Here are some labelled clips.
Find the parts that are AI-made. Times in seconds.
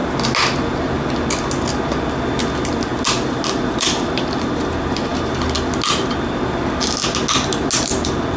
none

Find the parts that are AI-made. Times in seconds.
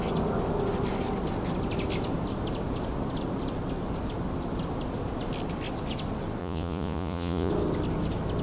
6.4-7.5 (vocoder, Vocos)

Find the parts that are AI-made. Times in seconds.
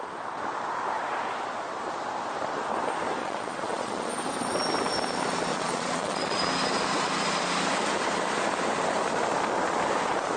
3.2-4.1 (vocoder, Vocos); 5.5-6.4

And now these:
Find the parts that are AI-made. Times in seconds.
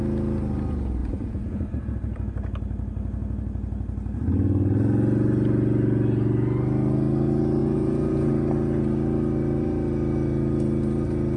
1.0-1.6 (vocoder, Vocos); 7.6-8.3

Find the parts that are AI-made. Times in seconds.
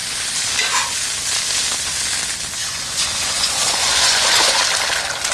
2.7-4.6 (vocoder, Vocos)